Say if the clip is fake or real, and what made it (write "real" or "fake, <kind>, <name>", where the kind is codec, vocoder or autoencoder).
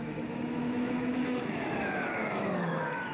fake, autoencoder, DAC-VAE